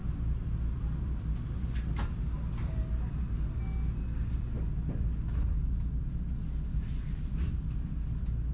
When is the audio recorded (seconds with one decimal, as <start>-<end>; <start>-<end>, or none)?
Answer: 1.6-8.5